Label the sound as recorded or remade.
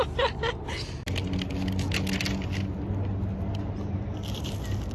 recorded